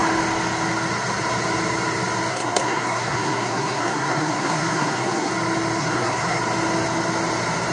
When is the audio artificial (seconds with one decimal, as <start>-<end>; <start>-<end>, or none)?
2.3-5.3; 5.8-6.4

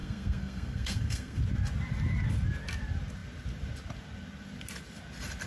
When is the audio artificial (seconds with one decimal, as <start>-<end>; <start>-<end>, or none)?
0.0-1.4

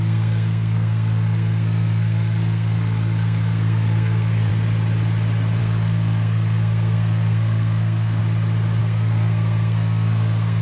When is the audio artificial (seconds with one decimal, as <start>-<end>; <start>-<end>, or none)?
0.0-4.5; 5.6-8.2; 8.8-10.6

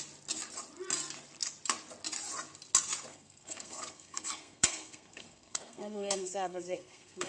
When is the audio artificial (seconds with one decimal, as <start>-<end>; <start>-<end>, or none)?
3.1-7.3

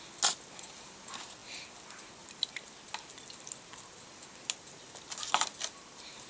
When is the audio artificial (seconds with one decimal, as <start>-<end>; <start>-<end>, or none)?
none

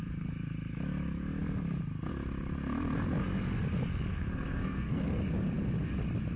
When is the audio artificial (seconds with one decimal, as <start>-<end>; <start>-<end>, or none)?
4.1-5.2

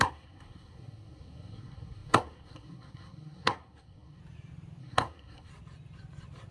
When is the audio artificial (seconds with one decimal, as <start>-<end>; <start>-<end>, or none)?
0.0-4.2; 4.8-5.5

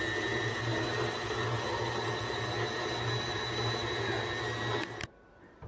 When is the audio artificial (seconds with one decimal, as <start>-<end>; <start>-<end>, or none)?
none